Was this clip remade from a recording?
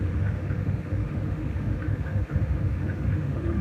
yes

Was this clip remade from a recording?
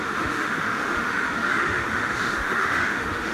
yes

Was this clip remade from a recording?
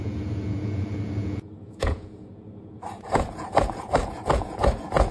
yes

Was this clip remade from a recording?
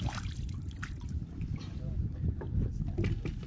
no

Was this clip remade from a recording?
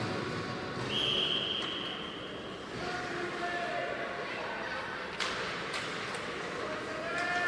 no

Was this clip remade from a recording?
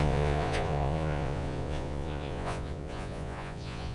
yes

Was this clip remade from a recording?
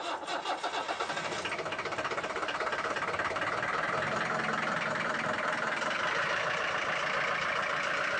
no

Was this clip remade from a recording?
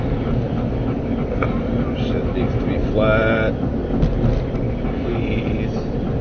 no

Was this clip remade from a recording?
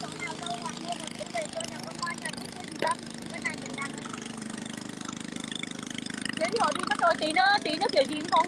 yes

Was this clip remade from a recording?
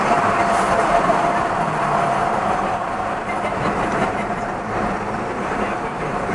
yes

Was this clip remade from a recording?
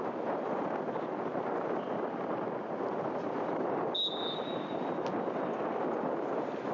no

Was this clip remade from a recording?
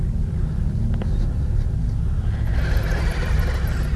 no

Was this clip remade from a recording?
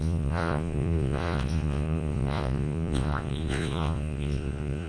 yes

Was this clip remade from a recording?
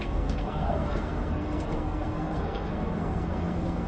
yes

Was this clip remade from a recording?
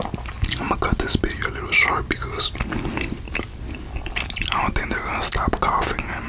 no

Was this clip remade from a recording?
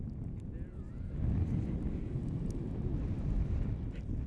no